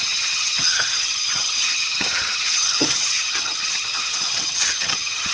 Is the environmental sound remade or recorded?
remade